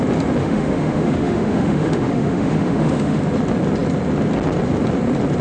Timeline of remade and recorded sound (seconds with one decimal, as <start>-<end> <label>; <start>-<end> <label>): 0.0-0.4 recorded; 0.4-3.2 remade; 3.2-5.4 recorded